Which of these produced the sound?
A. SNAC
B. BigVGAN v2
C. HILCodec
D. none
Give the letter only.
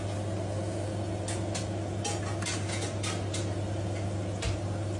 D